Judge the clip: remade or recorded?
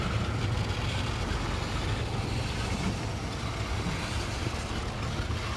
recorded